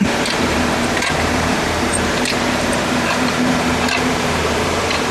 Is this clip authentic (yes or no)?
no